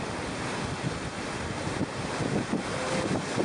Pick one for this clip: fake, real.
real